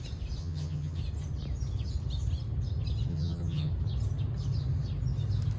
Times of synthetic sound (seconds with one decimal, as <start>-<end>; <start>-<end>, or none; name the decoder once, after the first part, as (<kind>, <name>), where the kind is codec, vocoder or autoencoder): 0.4-1.0 (vocoder, HiFi-GAN); 3.1-3.7